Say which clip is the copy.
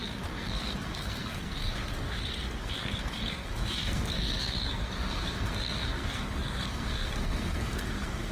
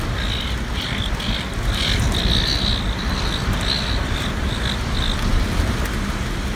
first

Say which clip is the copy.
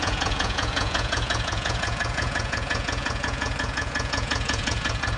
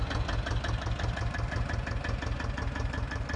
first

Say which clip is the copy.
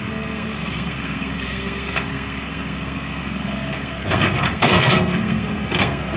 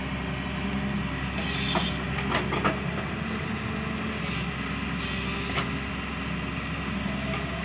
first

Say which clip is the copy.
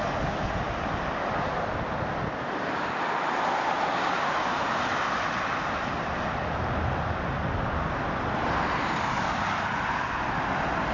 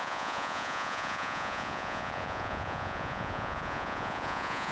second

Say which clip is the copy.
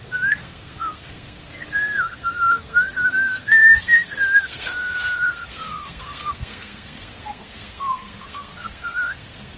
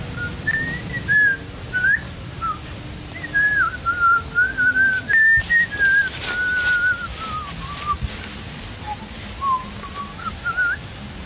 first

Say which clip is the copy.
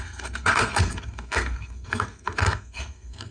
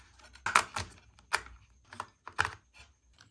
first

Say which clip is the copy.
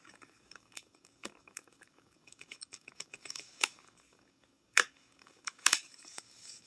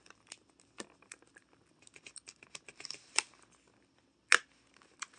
first